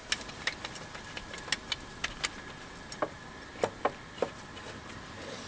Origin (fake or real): real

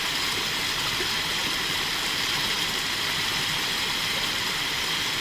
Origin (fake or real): real